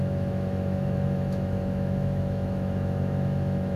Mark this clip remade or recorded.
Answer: remade